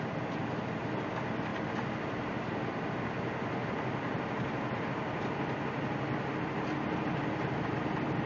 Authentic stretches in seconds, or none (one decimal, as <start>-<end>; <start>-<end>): 0.0-8.3